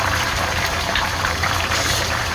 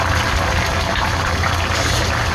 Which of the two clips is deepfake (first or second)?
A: first